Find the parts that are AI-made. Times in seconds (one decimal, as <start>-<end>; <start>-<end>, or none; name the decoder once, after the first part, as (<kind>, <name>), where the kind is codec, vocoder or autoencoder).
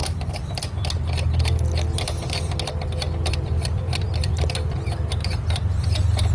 3.3-6.3 (vocoder, BigVGAN v2)